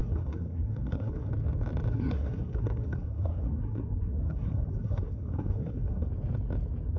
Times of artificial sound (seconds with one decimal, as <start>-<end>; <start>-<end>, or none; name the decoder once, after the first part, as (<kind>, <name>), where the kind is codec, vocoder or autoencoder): 0.0-1.3 (codec, SNAC); 1.9-6.1